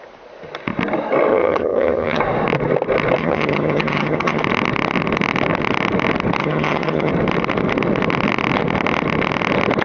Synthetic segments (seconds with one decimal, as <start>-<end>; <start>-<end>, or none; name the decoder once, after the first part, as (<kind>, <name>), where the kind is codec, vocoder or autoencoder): 1.3-2.2 (vocoder, HiFi-GAN); 3.2-4.4; 6.4-7.1